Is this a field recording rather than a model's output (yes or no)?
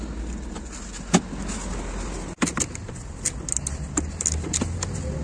yes